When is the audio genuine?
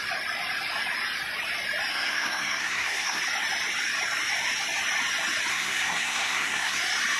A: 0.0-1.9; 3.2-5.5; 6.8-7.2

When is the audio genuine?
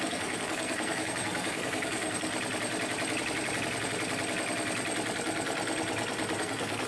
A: 2.3-6.4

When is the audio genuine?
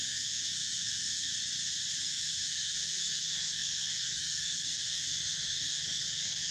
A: 1.3-2.0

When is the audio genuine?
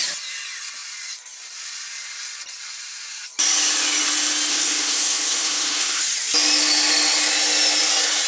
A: 0.0-4.5; 6.0-8.3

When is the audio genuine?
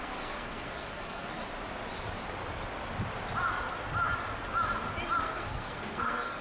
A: 1.4-5.2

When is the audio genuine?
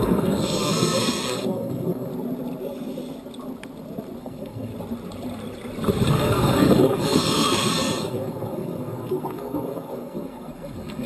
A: 2.1-4.2; 4.7-6.1